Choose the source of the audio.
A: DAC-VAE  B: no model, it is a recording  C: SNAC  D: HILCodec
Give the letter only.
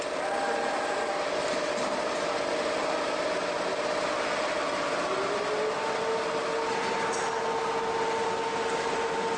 B